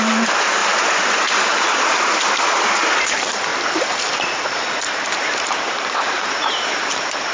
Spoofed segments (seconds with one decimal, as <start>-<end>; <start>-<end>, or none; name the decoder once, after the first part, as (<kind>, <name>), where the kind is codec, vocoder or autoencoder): 0.0-3.5 (vocoder, BigVGAN v2); 4.8-7.3